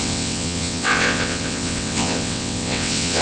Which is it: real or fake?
fake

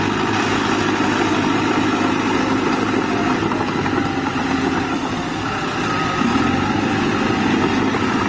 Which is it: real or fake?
real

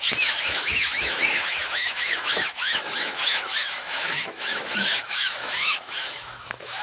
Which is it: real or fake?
fake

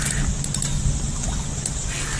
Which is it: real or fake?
real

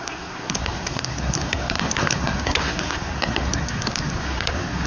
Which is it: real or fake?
fake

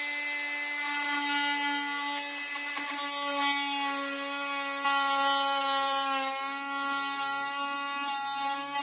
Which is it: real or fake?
real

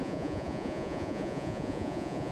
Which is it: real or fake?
fake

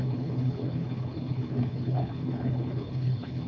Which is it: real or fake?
fake